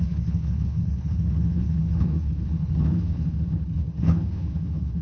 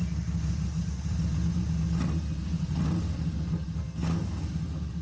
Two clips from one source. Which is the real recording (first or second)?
second